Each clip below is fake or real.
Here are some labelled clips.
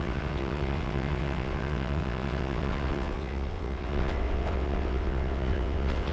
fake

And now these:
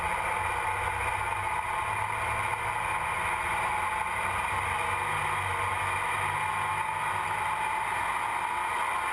real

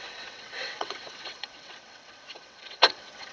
fake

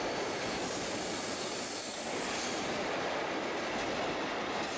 real